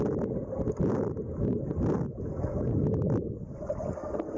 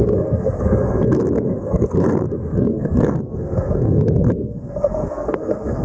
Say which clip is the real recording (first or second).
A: first